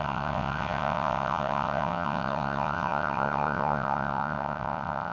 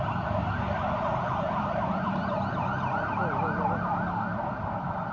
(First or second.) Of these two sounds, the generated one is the first